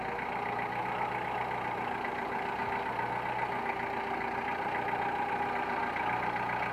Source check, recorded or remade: recorded